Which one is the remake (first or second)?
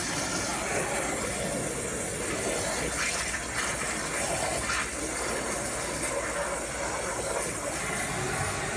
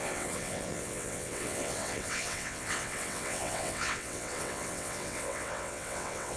second